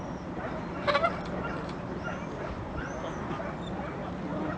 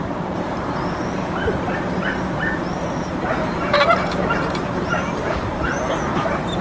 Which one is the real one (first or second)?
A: first